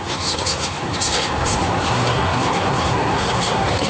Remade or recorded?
remade